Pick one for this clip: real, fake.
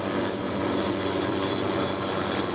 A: real